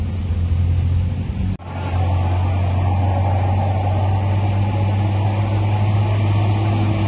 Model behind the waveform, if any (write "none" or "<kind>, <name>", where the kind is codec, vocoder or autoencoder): none